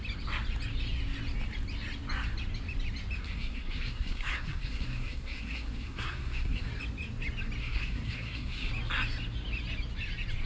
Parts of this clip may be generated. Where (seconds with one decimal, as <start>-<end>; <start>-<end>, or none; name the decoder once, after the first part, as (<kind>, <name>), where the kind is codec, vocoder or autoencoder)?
3.2-6.7 (codec, SNAC); 7.6-8.7